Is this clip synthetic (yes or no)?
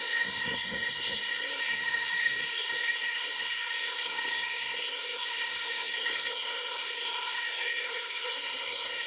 yes